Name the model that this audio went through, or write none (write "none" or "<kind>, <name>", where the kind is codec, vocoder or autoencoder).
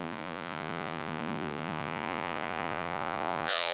vocoder, Vocos